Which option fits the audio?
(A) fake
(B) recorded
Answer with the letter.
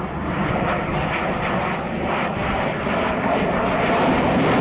A